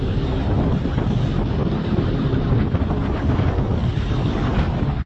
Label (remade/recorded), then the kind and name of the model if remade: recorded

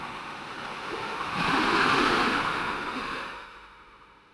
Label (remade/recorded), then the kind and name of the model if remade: remade, autoencoder, DAC-VAE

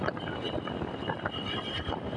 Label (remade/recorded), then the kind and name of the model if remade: recorded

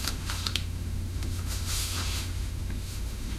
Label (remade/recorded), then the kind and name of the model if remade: remade, autoencoder, DAC-VAE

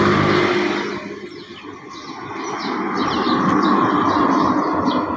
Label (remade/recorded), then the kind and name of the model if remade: recorded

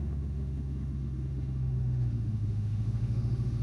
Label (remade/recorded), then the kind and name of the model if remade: remade, autoencoder, DAC-VAE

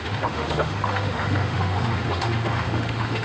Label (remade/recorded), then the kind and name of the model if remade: remade, autoencoder, DAC-VAE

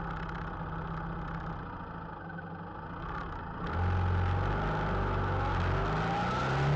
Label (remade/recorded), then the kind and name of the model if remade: recorded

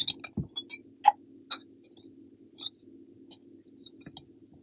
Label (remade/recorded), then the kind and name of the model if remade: recorded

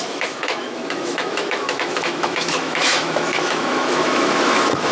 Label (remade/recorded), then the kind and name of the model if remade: remade, autoencoder, DAC-VAE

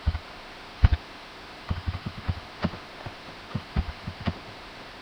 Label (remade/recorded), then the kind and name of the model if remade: remade, autoencoder, DAC-VAE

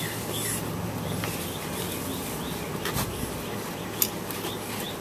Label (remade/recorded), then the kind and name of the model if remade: recorded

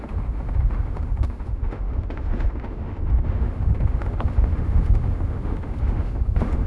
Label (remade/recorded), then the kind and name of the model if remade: remade, autoencoder, DAC-VAE